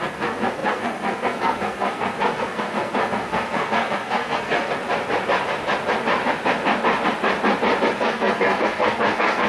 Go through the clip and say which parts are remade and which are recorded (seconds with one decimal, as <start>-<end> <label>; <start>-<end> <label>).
0.0-4.8 remade; 4.8-8.0 recorded; 8.0-9.5 remade

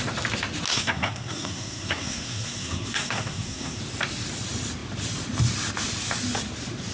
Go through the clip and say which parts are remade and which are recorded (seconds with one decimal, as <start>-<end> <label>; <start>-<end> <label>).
0.0-0.7 recorded; 0.7-3.8 remade; 3.8-6.9 recorded

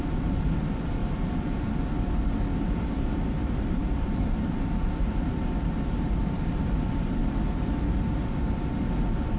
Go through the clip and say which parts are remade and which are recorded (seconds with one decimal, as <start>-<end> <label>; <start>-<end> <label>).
0.0-1.0 remade; 1.0-2.7 recorded; 2.7-7.2 remade; 7.2-7.8 recorded; 7.8-9.4 remade

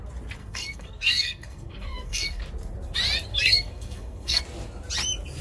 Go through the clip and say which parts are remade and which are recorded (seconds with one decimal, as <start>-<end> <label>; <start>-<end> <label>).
0.0-0.4 recorded; 0.4-2.4 remade; 2.4-3.3 recorded; 3.3-4.4 remade; 4.4-5.4 recorded

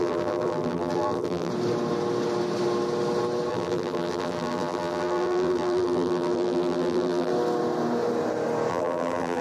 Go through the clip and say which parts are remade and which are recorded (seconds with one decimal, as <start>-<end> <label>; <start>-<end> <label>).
0.0-1.5 remade; 1.5-3.5 recorded; 3.5-7.3 remade; 7.3-8.7 recorded; 8.7-9.4 remade

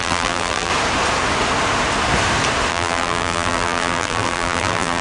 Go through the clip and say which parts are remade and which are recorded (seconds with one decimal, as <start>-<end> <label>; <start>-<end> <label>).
0.0-0.7 remade; 0.7-2.7 recorded; 2.7-5.0 remade

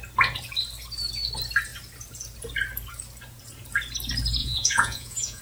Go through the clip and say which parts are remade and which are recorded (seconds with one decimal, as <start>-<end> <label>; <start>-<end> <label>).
0.0-4.4 recorded; 4.4-5.4 remade

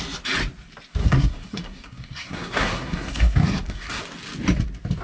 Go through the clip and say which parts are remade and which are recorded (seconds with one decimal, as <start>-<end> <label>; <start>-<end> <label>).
0.0-1.0 recorded; 1.0-4.0 remade; 4.0-5.0 recorded